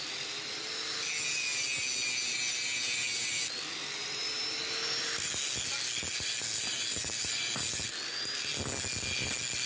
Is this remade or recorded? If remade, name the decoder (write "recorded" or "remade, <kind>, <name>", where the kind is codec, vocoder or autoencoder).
recorded